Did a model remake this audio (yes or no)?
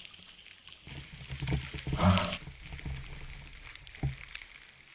no